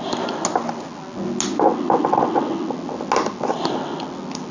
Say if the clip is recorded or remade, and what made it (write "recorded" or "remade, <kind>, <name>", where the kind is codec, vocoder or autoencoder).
recorded